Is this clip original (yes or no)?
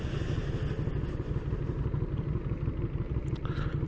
yes